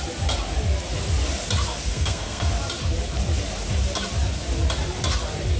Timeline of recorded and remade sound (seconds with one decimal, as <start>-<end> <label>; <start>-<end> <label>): 0.0-1.9 recorded; 1.9-2.5 remade; 2.5-5.6 recorded